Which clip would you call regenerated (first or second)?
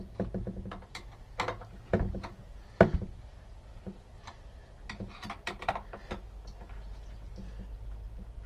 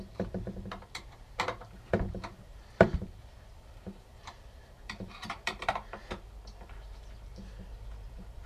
second